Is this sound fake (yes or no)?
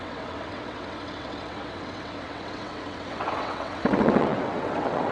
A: yes